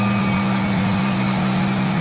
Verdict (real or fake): real